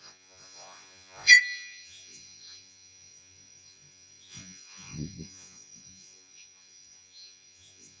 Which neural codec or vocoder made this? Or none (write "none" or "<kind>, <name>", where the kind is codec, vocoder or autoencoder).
vocoder, Vocos